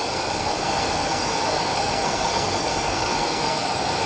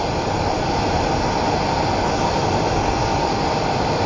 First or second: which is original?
second